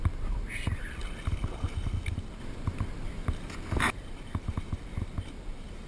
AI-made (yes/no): no